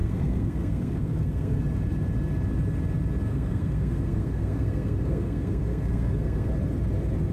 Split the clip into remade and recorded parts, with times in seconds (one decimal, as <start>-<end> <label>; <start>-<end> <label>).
0.0-1.6 remade; 1.6-3.3 recorded; 3.3-6.5 remade; 6.5-7.3 recorded